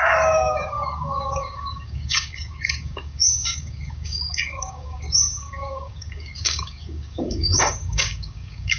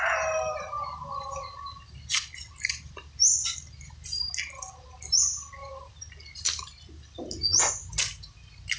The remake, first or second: first